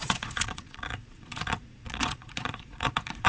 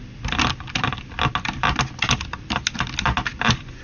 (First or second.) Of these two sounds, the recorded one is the second